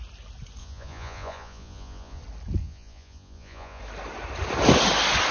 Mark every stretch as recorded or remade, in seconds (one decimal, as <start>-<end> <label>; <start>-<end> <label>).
0.0-0.6 recorded; 0.6-2.2 remade; 2.2-2.6 recorded; 2.6-3.8 remade; 3.8-5.3 recorded